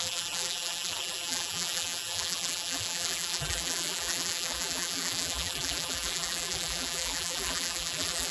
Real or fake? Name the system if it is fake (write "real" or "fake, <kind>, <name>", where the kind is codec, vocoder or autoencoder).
fake, vocoder, BigVGAN v2